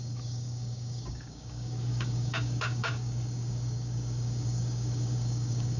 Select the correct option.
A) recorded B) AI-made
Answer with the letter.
B